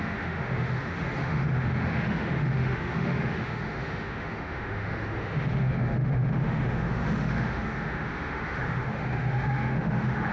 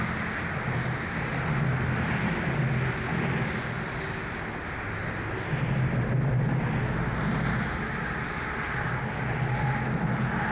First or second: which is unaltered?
second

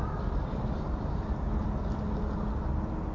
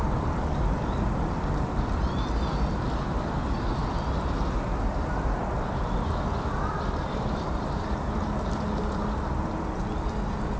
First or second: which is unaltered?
first